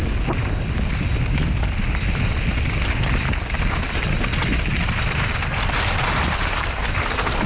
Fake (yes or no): no